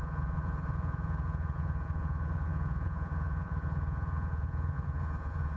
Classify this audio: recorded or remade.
remade